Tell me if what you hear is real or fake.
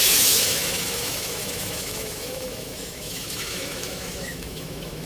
fake